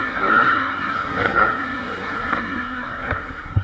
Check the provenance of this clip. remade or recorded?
remade